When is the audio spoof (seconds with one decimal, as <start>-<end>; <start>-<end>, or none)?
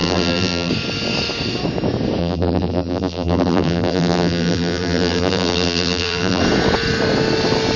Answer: 0.0-0.7; 2.2-6.4